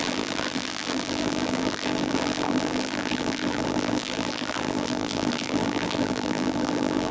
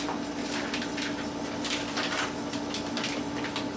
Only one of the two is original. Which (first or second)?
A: second